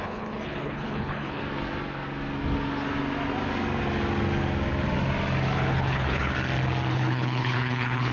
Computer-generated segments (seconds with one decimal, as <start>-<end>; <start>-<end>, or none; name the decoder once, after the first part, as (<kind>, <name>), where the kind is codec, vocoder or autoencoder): 0.0-1.4 (codec, HILCodec); 5.7-6.3; 6.9-8.1